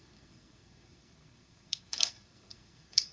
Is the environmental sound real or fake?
fake